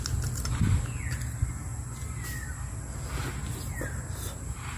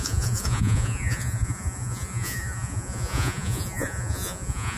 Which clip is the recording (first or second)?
first